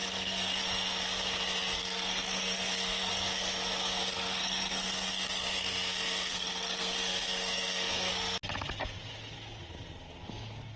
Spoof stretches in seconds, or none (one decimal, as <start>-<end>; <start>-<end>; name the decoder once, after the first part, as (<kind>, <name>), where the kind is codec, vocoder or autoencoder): 0.0-0.6 (codec, SNAC); 1.8-3.1; 4.1-8.1